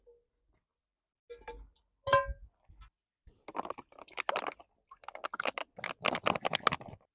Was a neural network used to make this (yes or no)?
no